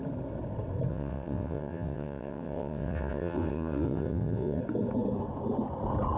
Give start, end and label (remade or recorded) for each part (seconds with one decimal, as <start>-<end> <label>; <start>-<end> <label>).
0.0-0.9 recorded; 0.9-4.6 remade; 4.6-6.2 recorded